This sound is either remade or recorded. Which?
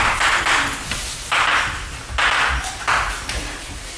recorded